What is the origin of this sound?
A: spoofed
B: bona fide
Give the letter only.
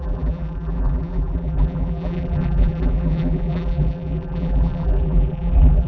A